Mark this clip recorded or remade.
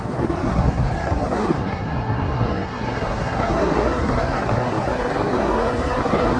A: remade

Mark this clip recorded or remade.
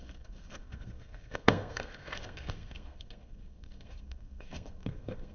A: remade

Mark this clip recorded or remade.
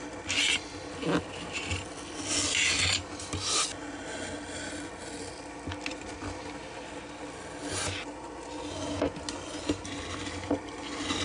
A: recorded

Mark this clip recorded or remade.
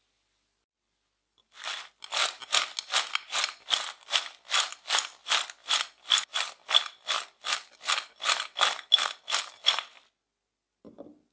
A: recorded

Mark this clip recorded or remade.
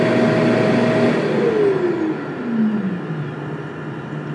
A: recorded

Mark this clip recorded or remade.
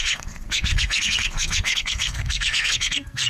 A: remade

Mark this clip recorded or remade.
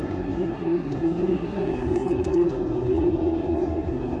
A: remade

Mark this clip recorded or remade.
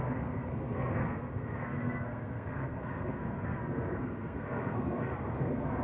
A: remade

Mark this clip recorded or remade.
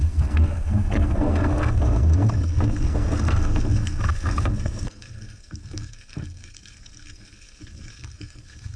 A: remade